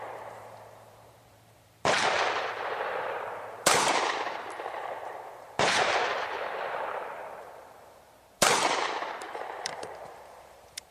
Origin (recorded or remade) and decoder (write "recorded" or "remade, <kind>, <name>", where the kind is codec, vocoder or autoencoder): remade, vocoder, BigVGAN v2